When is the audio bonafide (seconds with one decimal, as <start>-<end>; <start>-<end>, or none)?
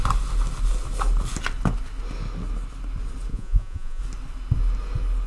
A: 0.0-3.3; 4.0-5.3